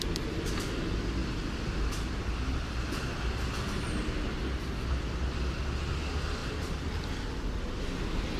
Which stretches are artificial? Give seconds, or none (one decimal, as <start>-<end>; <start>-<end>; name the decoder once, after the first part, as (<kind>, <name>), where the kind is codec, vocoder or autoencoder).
none